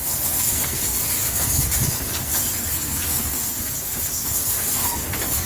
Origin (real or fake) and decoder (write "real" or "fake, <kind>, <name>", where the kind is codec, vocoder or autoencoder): fake, codec, SNAC